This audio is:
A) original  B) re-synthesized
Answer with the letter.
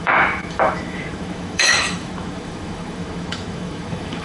B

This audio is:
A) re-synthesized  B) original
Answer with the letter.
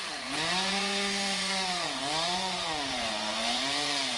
A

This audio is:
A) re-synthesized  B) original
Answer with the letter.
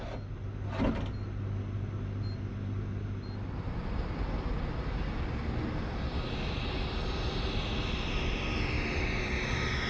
B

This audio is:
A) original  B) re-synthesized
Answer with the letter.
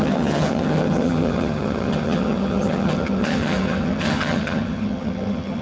B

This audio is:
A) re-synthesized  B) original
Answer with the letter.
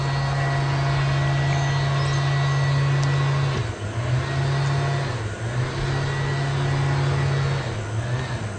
B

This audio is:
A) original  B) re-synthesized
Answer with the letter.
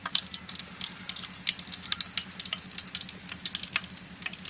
A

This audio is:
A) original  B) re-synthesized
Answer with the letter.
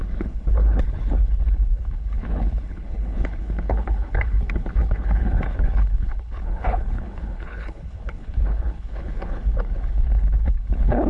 B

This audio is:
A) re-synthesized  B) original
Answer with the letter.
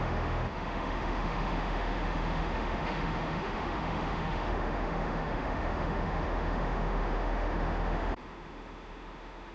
A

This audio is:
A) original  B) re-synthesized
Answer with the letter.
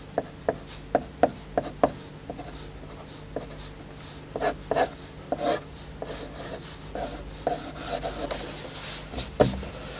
A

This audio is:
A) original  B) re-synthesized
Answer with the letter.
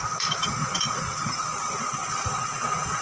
B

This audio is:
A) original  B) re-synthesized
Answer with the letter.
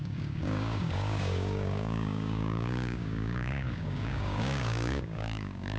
B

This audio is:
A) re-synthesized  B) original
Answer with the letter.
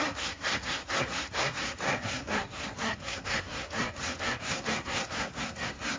A